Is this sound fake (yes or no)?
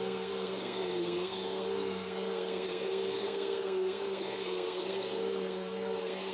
yes